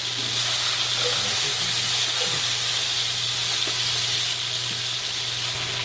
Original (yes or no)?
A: yes